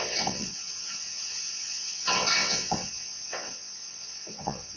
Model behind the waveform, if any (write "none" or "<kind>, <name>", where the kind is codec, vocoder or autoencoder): vocoder, WaveNeXt